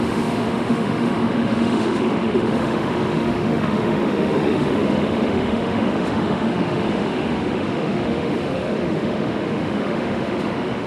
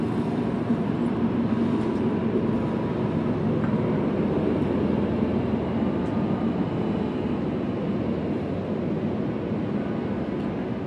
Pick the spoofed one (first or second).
first